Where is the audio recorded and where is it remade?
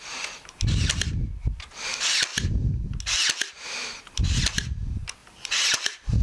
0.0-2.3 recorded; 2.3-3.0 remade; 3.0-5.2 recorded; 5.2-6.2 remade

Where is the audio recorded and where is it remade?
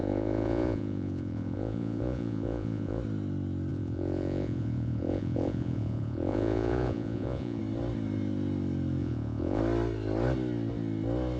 0.0-3.0 remade; 3.0-3.7 recorded; 3.7-7.6 remade; 7.6-9.0 recorded; 9.0-9.6 remade; 9.6-11.4 recorded